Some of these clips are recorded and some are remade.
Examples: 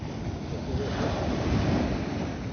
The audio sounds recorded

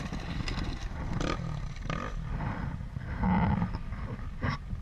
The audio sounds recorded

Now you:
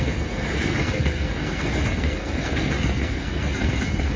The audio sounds remade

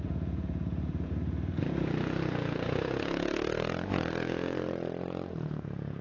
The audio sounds remade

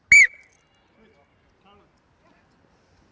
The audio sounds recorded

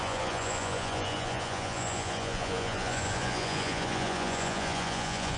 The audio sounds remade